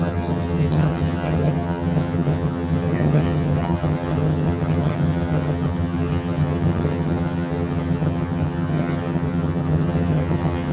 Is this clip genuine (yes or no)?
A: no